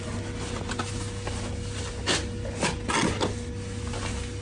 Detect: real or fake real